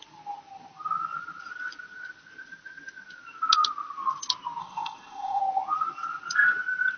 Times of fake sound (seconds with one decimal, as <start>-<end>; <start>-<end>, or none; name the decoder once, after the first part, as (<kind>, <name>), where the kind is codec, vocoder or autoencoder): 4.6-5.4 (codec, ZipCodec)